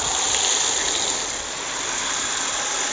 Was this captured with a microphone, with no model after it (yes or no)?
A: yes